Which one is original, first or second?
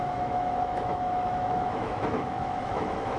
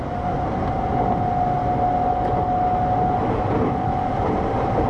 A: second